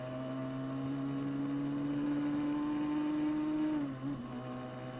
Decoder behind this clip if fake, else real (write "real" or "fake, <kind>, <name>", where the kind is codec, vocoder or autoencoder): real